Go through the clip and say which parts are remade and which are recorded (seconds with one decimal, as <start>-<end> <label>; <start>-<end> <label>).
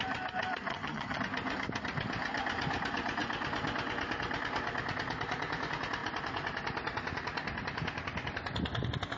0.0-0.7 recorded; 0.7-1.2 remade; 1.2-9.2 recorded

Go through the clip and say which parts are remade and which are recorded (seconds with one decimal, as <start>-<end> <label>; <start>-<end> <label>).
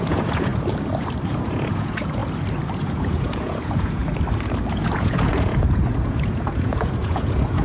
0.0-0.5 remade; 0.5-1.3 recorded; 1.3-2.2 remade; 2.2-2.7 recorded; 2.7-4.0 remade; 4.0-4.7 recorded; 4.7-7.6 remade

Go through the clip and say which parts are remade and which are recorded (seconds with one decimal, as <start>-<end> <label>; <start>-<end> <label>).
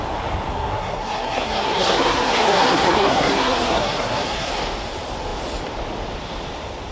0.0-0.5 recorded; 0.5-4.5 remade; 4.5-6.9 recorded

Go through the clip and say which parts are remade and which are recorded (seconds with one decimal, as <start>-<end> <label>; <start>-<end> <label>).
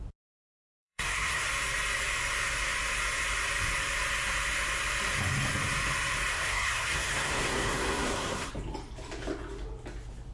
0.0-0.5 recorded; 0.5-1.5 remade; 1.5-6.3 recorded; 6.3-8.5 remade; 8.5-10.3 recorded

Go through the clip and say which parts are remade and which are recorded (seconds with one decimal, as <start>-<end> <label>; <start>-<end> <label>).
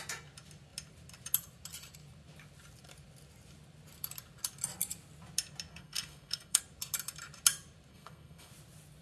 0.0-5.7 recorded; 5.7-6.6 remade; 6.6-7.9 recorded; 7.9-8.5 remade; 8.5-9.0 recorded